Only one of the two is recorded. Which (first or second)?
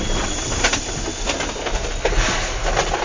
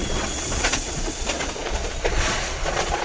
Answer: first